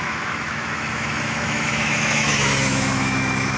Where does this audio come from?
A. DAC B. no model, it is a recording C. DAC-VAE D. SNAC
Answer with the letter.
C